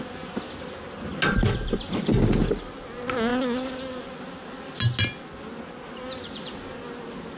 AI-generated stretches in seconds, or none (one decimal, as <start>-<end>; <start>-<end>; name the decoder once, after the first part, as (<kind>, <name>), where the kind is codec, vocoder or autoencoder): none